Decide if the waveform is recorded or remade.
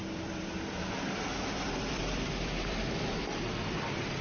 remade